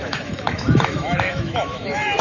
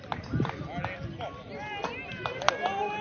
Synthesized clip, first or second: first